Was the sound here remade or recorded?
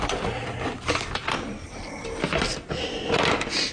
recorded